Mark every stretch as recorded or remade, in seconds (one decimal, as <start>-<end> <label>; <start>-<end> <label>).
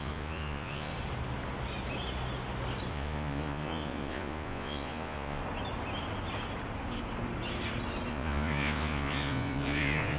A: 0.0-0.9 remade; 0.9-2.9 recorded; 2.9-5.4 remade; 5.4-8.1 recorded; 8.1-10.2 remade